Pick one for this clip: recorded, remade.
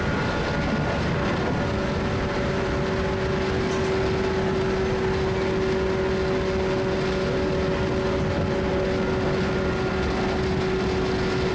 recorded